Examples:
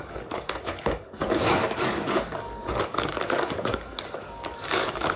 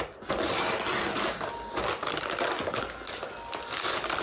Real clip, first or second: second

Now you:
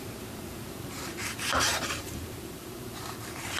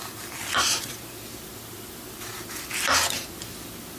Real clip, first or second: second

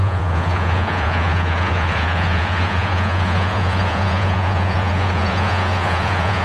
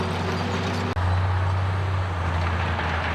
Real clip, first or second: second